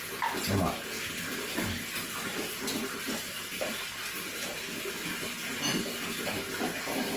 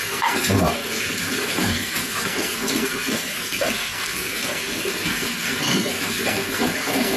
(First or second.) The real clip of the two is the first